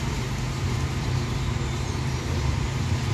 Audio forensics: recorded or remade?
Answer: remade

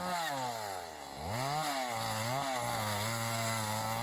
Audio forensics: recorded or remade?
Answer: recorded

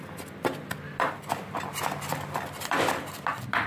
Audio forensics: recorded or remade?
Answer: recorded